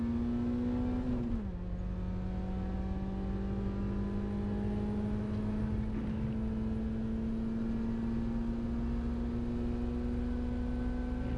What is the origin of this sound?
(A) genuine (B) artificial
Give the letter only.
A